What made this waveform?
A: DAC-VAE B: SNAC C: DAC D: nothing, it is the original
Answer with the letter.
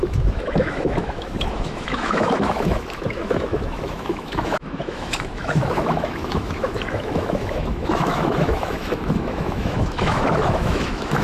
A